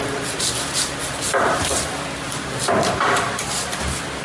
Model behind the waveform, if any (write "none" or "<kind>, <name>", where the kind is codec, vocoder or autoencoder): vocoder, BigVGAN v2